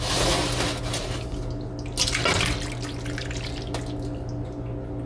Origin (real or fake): real